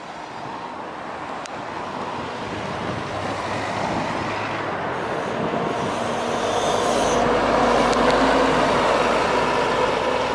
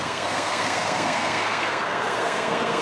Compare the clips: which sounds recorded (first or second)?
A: first